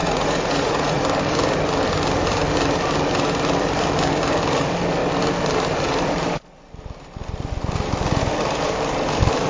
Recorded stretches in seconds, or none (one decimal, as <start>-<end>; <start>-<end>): 1.0-9.5